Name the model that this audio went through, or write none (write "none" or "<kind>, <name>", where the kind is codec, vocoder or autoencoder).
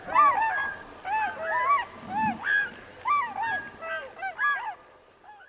none